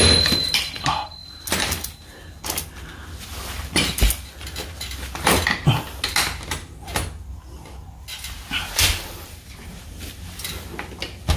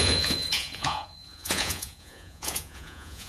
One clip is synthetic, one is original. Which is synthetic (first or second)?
second